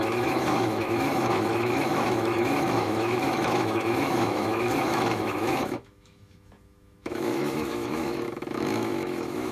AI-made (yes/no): yes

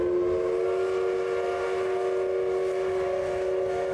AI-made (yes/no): no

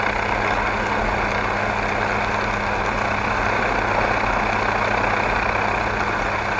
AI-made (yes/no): no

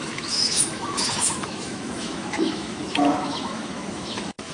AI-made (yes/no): yes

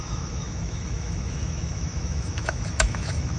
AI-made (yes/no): yes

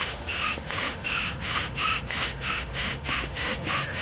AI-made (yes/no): yes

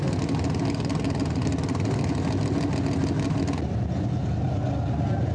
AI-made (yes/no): no